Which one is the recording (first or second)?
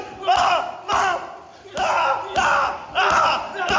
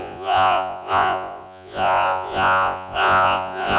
first